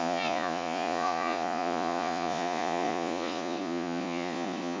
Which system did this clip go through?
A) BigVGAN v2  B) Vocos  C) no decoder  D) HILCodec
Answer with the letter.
B